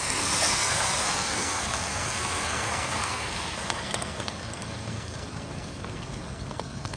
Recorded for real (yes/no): no